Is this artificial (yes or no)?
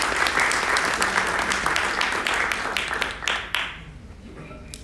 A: no